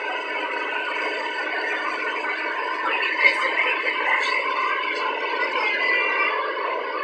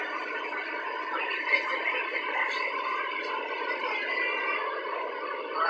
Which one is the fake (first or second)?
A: second